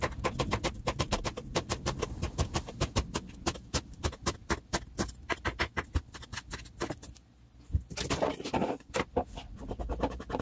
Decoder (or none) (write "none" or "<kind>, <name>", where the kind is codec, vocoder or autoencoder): none